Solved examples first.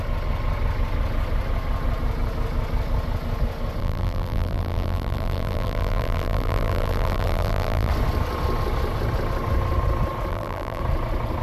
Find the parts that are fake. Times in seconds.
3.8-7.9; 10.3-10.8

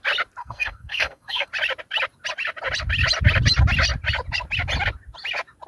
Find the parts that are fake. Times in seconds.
0.4-1.5

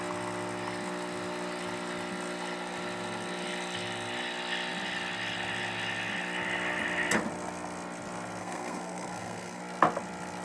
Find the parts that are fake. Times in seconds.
8.4-9.6

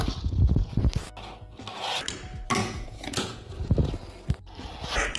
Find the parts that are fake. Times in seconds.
2.6-3.7

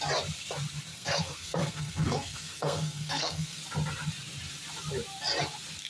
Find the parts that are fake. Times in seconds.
0.9-3.6